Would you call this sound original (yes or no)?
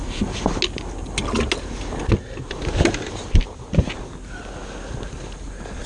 yes